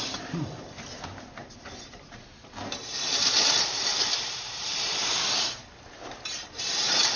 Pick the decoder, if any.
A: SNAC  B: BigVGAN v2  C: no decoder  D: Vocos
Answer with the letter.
B